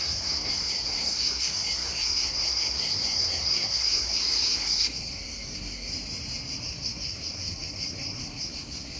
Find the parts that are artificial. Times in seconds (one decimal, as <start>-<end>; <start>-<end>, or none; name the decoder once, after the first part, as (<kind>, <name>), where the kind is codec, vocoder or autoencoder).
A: 0.0-5.9 (codec, SNAC); 6.6-9.0